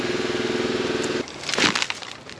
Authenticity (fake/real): real